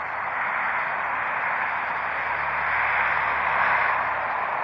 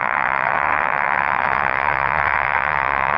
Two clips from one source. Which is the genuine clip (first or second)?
first